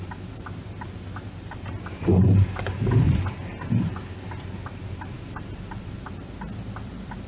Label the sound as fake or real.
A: real